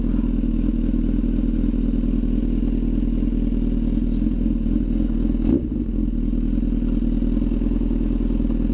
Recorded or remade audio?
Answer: recorded